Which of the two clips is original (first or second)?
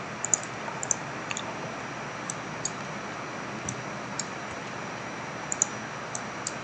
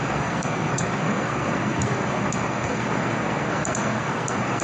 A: first